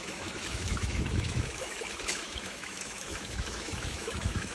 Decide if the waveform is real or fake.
fake